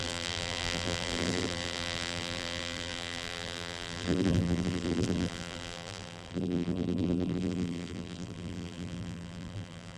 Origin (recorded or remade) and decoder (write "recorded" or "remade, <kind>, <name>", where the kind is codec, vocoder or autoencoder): remade, vocoder, BigVGAN v2